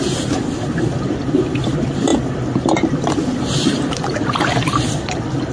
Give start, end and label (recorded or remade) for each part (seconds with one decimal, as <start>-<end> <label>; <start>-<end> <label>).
0.0-5.5 recorded